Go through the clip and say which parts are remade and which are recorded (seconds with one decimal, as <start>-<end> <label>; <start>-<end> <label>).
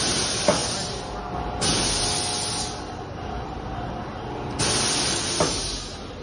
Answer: 0.0-6.2 recorded